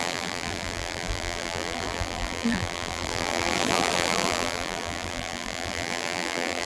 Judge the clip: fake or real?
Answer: fake